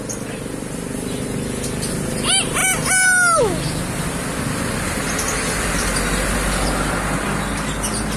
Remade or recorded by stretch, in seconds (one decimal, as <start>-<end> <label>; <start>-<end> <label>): 0.0-8.2 recorded